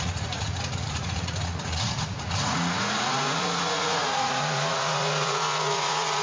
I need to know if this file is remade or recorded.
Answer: remade